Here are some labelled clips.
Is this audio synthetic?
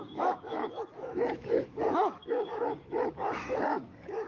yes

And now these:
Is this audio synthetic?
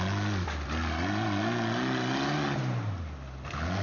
no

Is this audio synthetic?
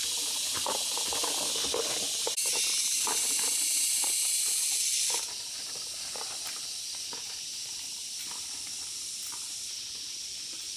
no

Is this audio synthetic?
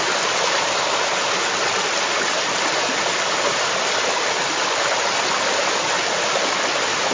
no